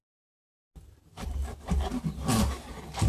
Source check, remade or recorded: recorded